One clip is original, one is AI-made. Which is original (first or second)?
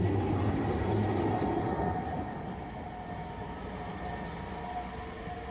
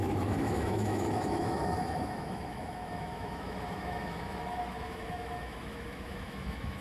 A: first